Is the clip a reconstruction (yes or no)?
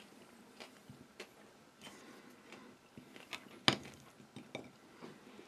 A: no